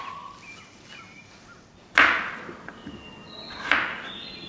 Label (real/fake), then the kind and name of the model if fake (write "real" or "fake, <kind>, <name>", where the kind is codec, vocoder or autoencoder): real